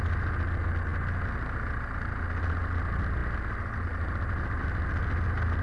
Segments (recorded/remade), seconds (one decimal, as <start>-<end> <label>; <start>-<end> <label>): 0.0-5.6 recorded